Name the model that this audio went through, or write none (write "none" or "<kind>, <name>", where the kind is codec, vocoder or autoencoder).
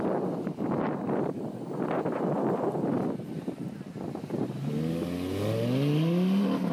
none